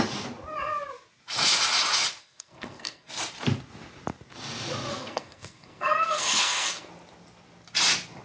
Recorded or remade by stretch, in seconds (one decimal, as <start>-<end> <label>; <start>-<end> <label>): 0.0-2.2 recorded; 2.2-3.1 remade; 3.1-4.9 recorded; 4.9-6.9 remade; 6.9-8.2 recorded